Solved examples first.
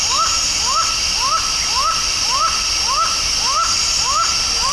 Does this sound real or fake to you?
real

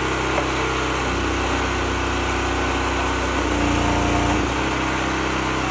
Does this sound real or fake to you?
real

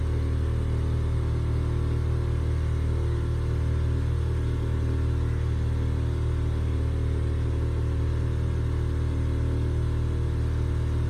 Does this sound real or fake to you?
real